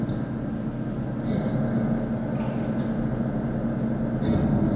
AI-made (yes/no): no